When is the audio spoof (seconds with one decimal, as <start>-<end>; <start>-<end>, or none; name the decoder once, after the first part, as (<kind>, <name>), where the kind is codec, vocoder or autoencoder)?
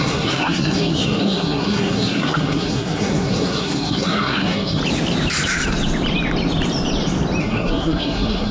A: 0.0-4.8 (codec, SNAC); 7.4-8.5